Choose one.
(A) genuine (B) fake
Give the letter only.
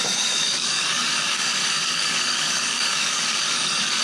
B